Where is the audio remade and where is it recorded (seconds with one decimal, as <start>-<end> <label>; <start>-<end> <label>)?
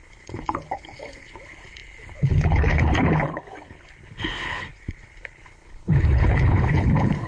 0.0-7.3 remade